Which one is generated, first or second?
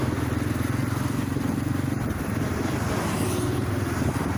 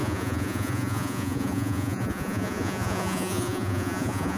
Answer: second